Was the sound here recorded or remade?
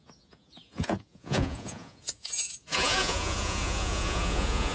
remade